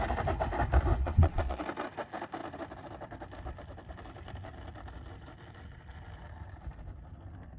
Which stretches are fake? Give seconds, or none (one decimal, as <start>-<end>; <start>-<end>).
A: 1.0-1.6